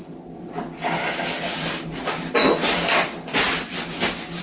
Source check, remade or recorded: recorded